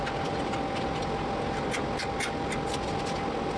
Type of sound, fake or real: real